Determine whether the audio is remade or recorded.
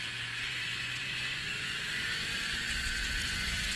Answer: remade